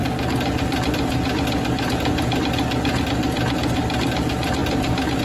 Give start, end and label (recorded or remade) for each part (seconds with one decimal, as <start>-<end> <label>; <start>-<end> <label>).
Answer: 0.0-5.2 recorded